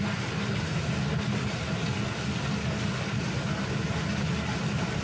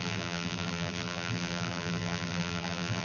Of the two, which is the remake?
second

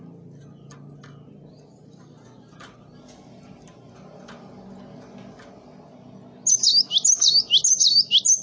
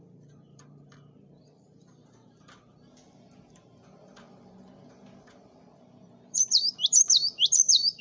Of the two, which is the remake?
second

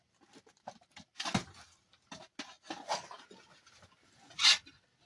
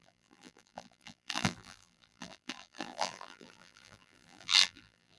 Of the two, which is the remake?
second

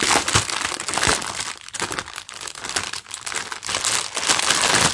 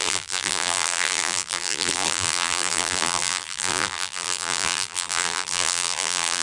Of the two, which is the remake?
second